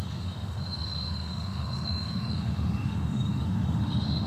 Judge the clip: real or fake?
fake